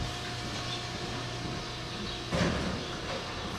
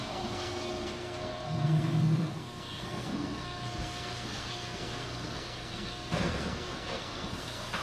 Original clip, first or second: first